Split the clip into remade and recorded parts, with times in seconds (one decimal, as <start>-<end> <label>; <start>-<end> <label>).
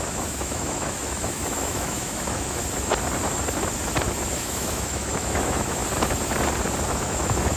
0.0-2.6 remade; 2.6-4.3 recorded; 4.3-5.8 remade; 5.8-6.9 recorded; 6.9-7.6 remade